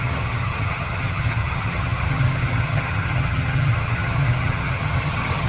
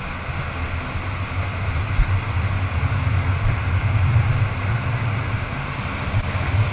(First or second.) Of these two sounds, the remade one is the first